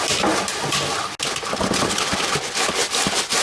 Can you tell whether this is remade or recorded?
recorded